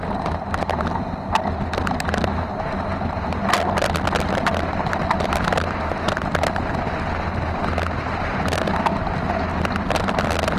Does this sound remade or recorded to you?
recorded